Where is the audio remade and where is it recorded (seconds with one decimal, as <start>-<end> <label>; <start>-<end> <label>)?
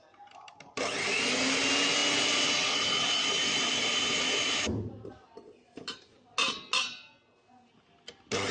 0.0-1.2 remade; 1.2-8.5 recorded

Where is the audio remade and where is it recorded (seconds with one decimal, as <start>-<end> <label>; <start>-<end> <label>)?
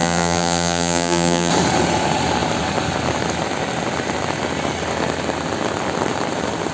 0.0-1.5 remade; 1.5-6.7 recorded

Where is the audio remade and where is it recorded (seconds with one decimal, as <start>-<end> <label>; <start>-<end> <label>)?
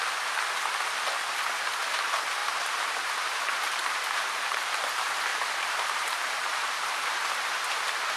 0.0-2.4 recorded; 2.4-4.7 remade; 4.7-5.3 recorded; 5.3-7.5 remade; 7.5-8.2 recorded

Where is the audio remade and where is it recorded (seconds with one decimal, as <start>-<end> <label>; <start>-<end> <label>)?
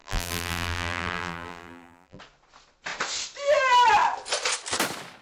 0.0-2.2 remade; 2.2-5.2 recorded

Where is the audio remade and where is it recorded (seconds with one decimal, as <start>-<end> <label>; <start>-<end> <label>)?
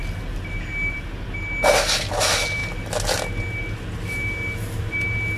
0.0-5.4 recorded